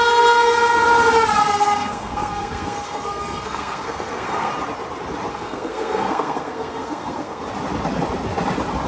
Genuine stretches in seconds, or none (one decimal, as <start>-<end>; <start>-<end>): 0.0-1.4; 4.5-5.3; 7.4-8.9